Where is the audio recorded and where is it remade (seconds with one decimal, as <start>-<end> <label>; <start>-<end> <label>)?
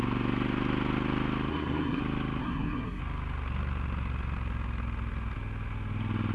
0.0-1.5 recorded; 1.5-2.0 remade; 2.0-2.4 recorded; 2.4-3.0 remade; 3.0-6.3 recorded